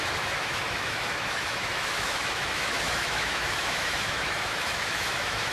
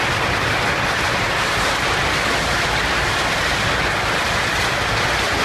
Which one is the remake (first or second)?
first